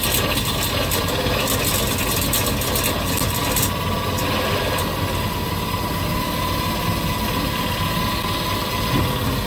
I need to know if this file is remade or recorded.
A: recorded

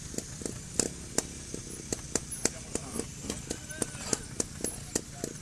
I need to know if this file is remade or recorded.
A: recorded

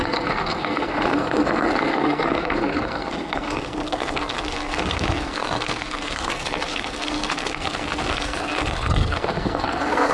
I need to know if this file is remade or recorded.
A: remade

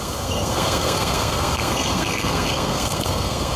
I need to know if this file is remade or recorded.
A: remade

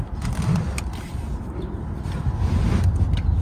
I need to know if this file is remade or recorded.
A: recorded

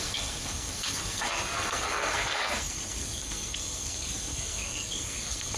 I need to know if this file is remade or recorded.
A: remade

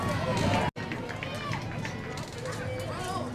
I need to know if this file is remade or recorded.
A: recorded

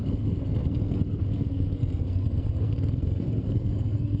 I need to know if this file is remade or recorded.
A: remade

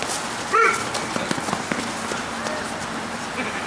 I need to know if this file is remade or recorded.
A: recorded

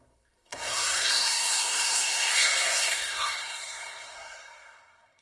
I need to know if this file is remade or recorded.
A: remade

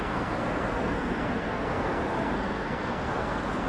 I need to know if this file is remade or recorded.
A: remade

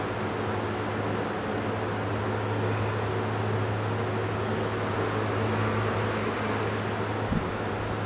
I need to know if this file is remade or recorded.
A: recorded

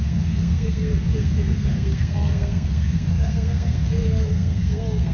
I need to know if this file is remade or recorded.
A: remade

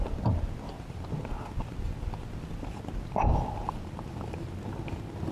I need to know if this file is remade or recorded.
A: recorded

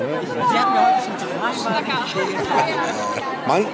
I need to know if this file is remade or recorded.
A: recorded